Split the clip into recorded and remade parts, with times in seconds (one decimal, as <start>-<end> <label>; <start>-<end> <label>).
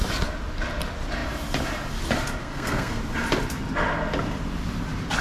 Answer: 0.0-2.4 recorded; 2.4-3.0 remade; 3.0-5.2 recorded